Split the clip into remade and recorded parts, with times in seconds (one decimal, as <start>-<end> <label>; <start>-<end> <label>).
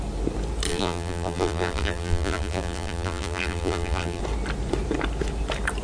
0.0-0.7 recorded; 0.7-4.2 remade; 4.2-5.8 recorded